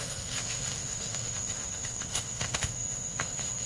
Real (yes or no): no